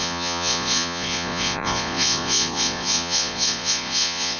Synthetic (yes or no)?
yes